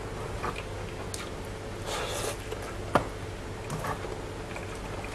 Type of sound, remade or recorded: recorded